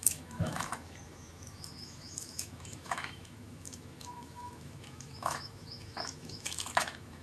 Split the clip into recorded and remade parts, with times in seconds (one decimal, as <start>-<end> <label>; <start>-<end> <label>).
0.0-7.2 remade